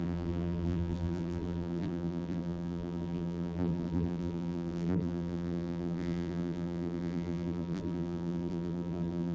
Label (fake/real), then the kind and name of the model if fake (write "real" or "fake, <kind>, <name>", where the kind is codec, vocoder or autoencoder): fake, vocoder, BigVGAN v2